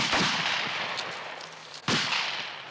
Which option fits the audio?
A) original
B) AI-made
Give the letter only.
A